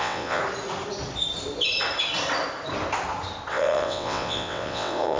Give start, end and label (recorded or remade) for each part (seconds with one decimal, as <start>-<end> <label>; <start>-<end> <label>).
0.0-0.4 remade; 0.4-3.5 recorded; 3.5-5.2 remade